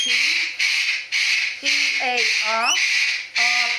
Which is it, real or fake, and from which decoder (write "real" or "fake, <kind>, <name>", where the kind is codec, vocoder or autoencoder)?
real